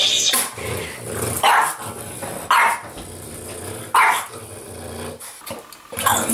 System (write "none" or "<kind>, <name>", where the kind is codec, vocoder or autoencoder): none